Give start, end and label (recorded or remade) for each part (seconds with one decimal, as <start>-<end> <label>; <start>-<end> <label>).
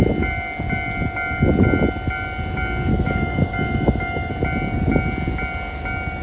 0.0-2.9 recorded; 2.9-4.3 remade; 4.3-6.2 recorded